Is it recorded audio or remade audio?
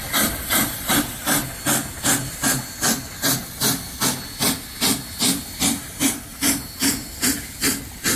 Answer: recorded